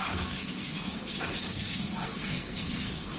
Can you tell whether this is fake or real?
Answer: fake